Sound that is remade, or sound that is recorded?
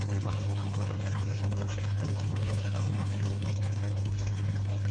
remade